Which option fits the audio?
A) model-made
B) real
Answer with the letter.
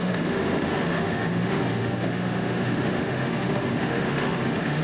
A